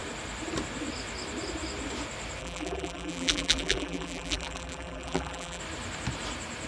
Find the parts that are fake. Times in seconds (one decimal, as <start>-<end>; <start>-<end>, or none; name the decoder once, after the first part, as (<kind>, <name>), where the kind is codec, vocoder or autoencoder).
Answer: 2.4-5.6 (vocoder, BigVGAN v2)